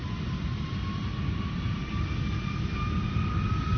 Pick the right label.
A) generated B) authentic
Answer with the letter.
B